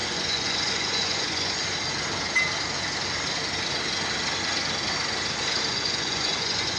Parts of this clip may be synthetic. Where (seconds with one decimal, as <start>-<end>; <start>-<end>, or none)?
0.0-1.6; 5.7-6.8